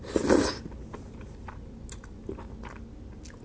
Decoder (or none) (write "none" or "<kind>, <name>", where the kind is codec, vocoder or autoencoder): none